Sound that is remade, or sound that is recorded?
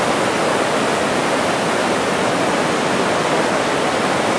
recorded